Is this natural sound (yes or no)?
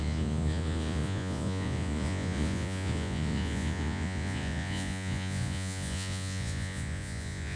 no